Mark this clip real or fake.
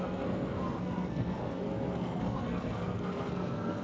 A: fake